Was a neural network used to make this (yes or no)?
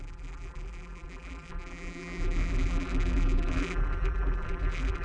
yes